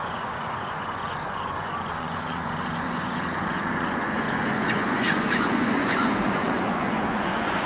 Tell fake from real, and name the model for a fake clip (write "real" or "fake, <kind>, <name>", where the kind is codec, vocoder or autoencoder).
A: fake, vocoder, Vocos